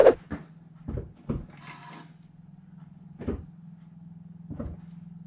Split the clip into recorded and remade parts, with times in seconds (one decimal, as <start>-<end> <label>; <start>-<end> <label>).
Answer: 0.0-5.3 recorded